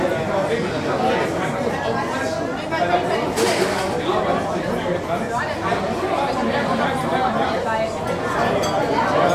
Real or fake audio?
real